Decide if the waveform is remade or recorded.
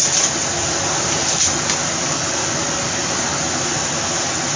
recorded